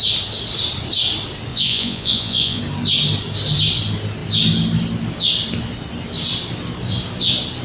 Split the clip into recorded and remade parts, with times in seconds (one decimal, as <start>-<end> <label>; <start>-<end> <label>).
0.0-1.5 recorded; 1.5-2.6 remade; 2.6-7.6 recorded